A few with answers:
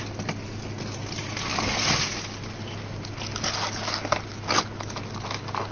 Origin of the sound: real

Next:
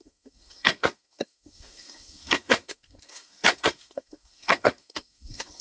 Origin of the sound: fake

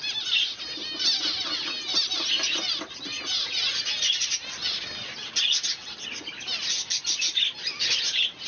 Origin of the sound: real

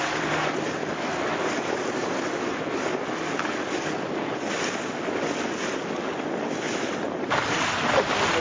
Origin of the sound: real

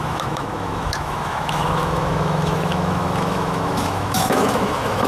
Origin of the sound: fake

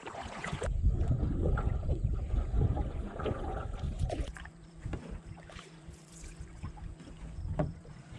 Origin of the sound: fake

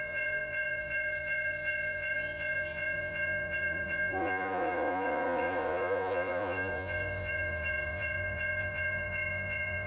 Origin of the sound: fake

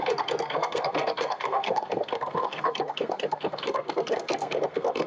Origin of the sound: fake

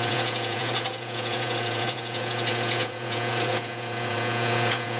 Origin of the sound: fake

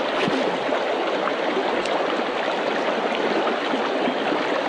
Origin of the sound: real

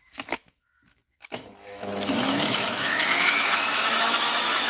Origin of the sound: fake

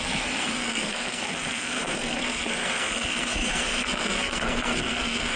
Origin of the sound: fake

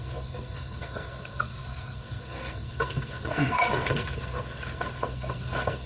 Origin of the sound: fake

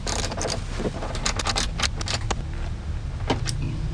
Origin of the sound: real